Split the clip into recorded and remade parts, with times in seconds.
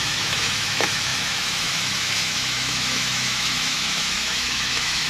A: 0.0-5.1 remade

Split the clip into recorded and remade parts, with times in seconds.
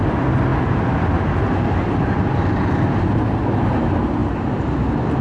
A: 0.0-5.2 recorded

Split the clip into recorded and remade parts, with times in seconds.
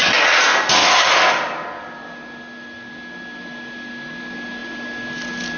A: 0.0-0.8 recorded; 0.8-1.3 remade; 1.3-5.6 recorded